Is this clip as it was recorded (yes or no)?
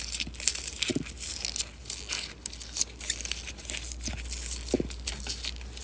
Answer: yes